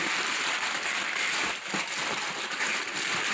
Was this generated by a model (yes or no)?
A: no